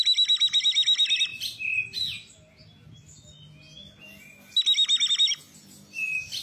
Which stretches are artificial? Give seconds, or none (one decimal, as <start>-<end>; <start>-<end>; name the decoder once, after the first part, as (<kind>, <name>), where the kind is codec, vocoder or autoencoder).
none